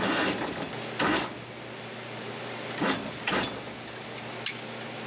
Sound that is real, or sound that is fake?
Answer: real